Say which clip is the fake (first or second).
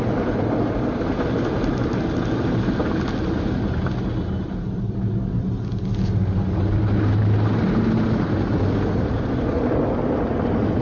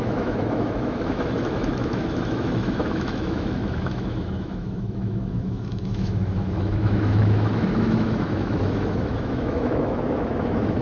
second